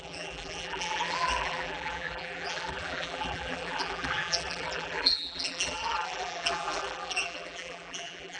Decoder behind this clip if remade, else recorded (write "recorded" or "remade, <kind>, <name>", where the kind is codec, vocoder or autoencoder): remade, vocoder, BigVGAN v2